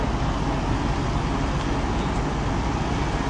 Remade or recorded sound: recorded